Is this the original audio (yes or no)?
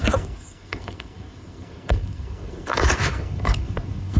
no